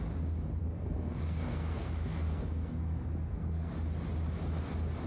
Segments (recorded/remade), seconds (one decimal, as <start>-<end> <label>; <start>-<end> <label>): 0.0-0.6 recorded; 0.6-3.7 remade; 3.7-5.1 recorded